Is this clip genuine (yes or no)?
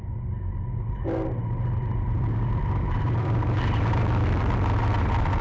no